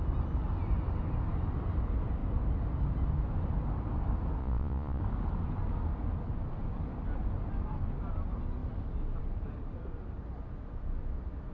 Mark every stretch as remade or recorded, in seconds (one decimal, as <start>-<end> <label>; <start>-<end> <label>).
0.0-4.4 recorded; 4.4-5.0 remade; 5.0-11.5 recorded